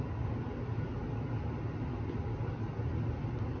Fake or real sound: real